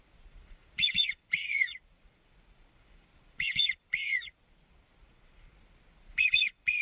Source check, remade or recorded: remade